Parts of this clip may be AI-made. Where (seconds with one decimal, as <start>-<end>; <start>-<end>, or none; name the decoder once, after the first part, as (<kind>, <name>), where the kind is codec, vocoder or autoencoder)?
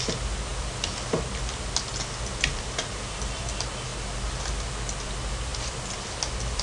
none